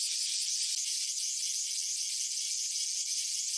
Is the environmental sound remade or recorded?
recorded